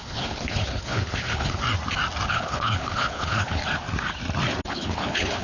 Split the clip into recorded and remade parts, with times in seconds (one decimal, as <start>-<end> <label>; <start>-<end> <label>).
0.0-1.6 remade; 1.6-2.3 recorded; 2.3-3.6 remade; 3.6-4.7 recorded; 4.7-5.4 remade